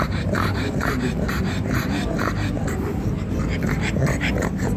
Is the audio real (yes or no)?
no